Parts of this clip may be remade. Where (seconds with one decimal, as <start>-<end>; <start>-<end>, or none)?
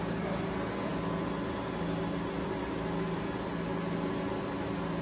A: none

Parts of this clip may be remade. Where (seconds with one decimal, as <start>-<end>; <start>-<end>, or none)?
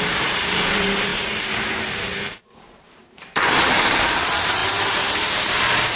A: 0.0-6.0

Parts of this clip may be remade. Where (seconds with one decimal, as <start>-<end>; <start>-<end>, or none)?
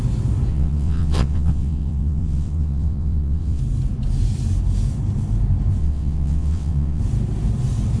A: 0.5-3.6; 5.8-7.0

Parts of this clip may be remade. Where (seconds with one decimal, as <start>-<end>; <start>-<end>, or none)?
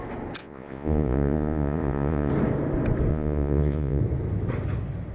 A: 0.4-2.3; 3.1-4.0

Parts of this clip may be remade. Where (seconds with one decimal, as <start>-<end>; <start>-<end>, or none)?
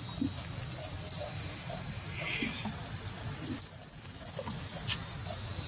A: 0.8-2.1